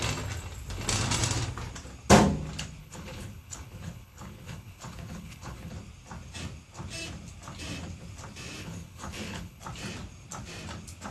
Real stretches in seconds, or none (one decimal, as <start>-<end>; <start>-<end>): 0.0-2.8; 5.7-8.6; 9.6-11.1